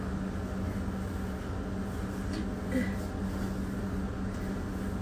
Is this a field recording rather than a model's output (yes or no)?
yes